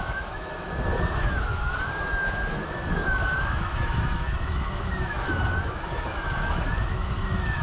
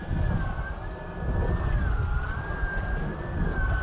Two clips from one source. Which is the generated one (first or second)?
first